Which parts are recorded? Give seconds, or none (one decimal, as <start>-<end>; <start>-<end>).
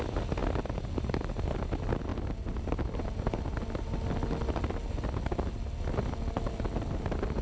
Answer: 0.0-7.4